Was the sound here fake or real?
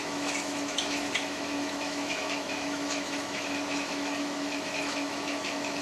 fake